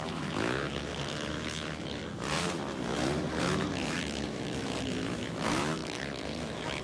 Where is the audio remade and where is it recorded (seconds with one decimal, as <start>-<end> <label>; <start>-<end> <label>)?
0.0-2.0 remade; 2.0-3.4 recorded; 3.4-6.8 remade